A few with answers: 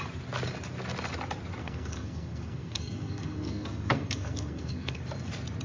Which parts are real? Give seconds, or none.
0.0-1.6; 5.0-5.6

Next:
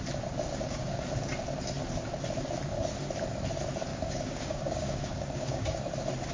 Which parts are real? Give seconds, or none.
0.0-0.5; 1.1-3.9; 5.8-6.3

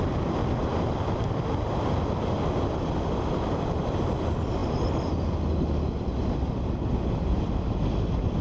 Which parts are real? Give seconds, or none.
0.0-8.4